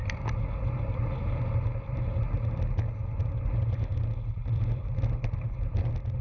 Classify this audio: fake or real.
real